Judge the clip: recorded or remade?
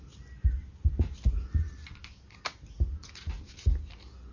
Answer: recorded